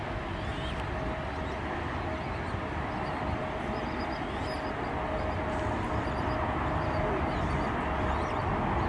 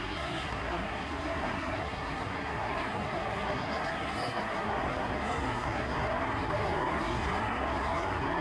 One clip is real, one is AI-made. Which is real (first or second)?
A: first